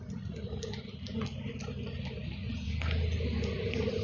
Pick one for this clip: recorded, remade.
recorded